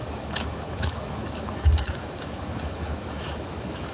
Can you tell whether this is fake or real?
fake